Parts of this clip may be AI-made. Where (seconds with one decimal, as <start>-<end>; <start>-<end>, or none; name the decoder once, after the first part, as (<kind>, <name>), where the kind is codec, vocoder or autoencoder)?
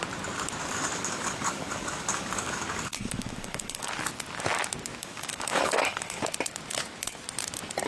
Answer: 0.6-3.9 (codec, DAC); 5.0-6.2